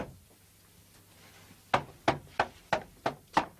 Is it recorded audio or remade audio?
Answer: recorded